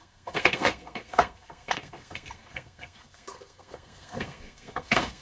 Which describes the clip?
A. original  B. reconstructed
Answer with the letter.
B